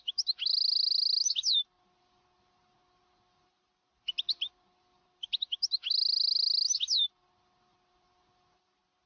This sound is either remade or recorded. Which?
recorded